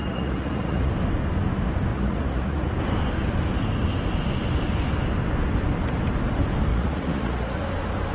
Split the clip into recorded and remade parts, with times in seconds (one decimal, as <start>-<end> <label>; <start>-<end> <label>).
0.0-0.9 remade; 0.9-1.9 recorded; 1.9-2.7 remade; 2.7-6.7 recorded; 6.7-7.6 remade; 7.6-8.1 recorded